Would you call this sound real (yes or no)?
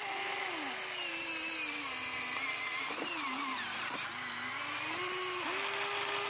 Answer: yes